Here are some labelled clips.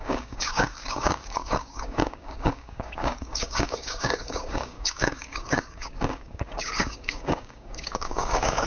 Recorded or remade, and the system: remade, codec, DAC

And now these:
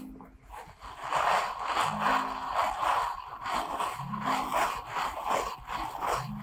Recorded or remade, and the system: recorded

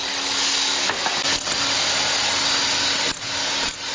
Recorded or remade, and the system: recorded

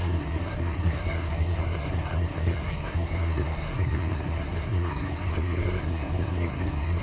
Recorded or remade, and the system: remade, codec, SNAC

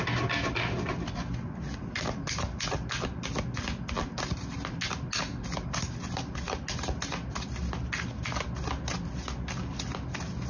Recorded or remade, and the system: recorded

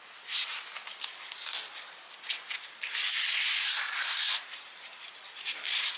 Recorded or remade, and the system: recorded